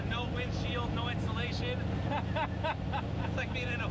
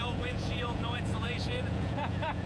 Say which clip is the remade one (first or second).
second